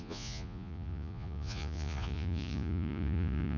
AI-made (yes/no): yes